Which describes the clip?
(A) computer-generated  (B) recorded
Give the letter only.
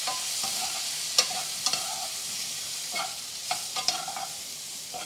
A